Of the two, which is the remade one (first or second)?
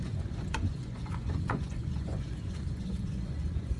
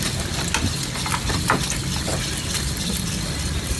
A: first